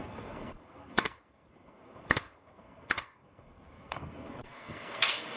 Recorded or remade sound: remade